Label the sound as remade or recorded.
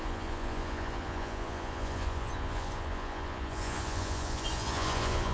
remade